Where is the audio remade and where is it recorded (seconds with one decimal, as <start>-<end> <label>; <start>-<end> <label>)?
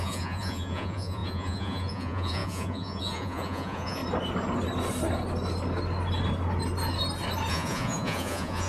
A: 0.0-4.0 remade; 4.0-7.5 recorded; 7.5-8.7 remade